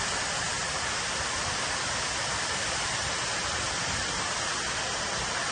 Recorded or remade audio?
recorded